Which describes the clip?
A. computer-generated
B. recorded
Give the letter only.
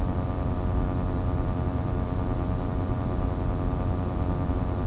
A